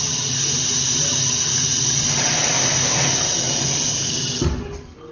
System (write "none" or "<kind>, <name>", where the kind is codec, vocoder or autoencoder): none